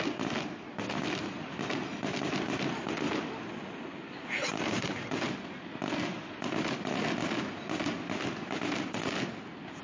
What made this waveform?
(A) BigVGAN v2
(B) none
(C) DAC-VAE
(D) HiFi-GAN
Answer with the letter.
B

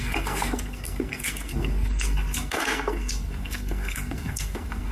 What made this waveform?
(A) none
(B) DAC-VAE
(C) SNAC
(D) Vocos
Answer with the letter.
C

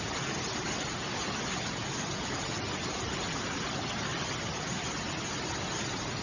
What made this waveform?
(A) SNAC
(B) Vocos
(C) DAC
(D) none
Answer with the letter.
D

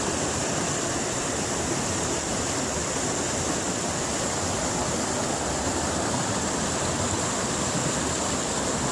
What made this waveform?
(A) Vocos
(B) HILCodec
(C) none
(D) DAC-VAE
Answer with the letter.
C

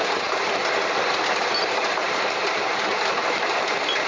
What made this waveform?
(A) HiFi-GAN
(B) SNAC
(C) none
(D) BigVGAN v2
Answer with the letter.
C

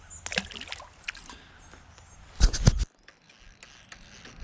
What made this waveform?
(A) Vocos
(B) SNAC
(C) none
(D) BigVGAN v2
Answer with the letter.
C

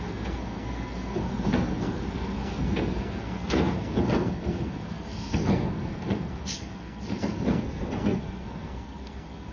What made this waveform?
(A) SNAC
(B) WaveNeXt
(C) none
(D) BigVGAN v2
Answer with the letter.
A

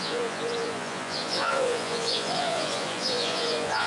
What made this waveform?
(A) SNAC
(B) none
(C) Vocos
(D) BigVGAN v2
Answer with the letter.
C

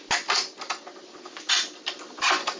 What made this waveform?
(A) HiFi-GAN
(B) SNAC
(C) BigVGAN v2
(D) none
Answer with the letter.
D